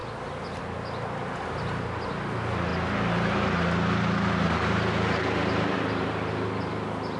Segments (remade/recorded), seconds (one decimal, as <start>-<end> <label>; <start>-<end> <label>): 0.0-7.2 recorded